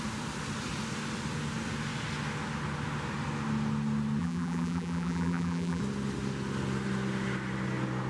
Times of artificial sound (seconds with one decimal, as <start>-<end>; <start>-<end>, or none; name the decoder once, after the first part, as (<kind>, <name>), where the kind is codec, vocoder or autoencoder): 4.2-5.8 (vocoder, BigVGAN v2)